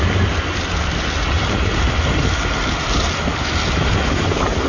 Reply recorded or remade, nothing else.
recorded